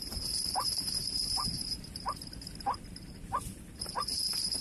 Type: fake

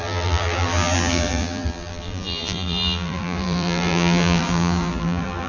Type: fake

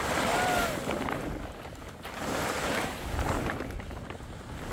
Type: real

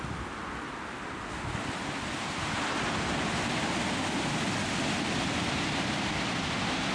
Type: real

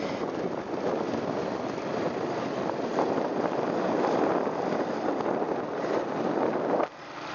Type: real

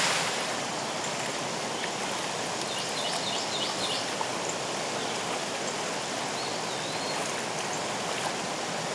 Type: real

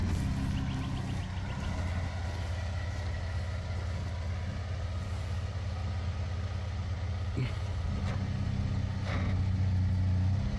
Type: real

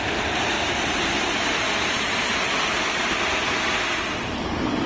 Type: real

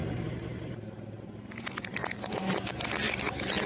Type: fake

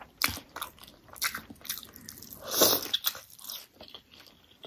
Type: fake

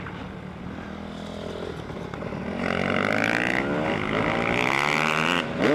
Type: real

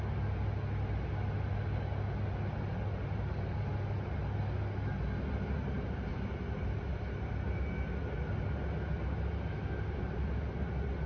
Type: real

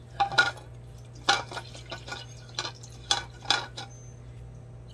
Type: real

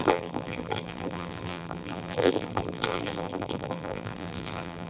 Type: fake